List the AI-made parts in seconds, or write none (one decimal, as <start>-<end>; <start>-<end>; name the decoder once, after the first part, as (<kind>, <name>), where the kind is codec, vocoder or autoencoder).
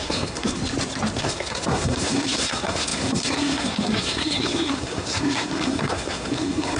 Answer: 0.0-0.6 (codec, SNAC); 1.2-6.8